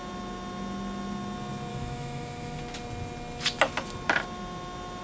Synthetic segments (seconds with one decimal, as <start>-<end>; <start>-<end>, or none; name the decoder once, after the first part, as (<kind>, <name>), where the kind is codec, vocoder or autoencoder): 1.7-2.6 (autoencoder, DAC-VAE)